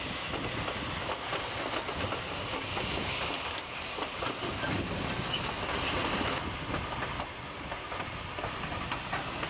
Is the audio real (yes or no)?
yes